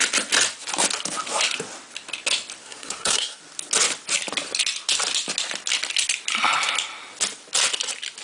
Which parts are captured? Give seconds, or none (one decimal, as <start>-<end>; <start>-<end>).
0.0-2.6; 3.4-8.2